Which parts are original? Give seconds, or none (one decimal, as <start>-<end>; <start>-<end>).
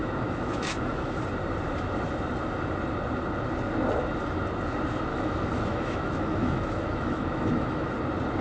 1.2-5.1; 7.9-8.4